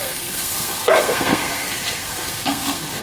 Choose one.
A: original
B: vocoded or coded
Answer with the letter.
B